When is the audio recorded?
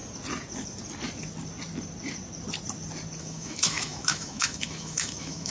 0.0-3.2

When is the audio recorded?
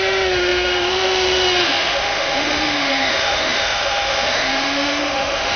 none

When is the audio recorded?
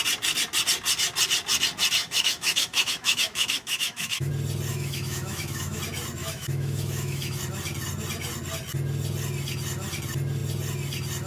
0.0-2.0; 4.3-4.7; 5.8-6.2; 7.4-11.3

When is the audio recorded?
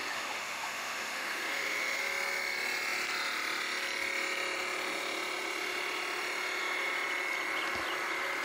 2.0-8.4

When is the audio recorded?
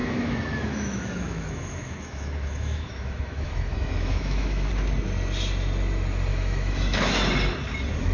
4.7-6.3; 7.3-8.1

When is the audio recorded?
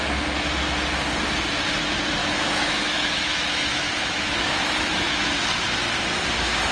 0.0-2.2; 5.3-6.7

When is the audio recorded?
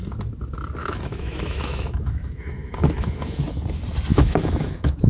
0.0-0.8; 3.4-4.1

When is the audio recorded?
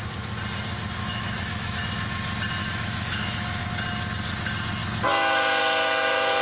0.0-1.0; 1.8-2.6; 3.6-6.4